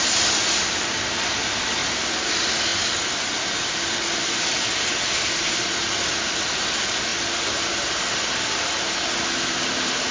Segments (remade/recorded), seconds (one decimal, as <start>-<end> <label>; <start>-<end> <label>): 0.0-10.1 recorded